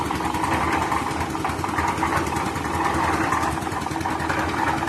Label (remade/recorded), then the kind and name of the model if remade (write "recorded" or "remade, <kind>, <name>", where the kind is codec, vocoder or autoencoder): recorded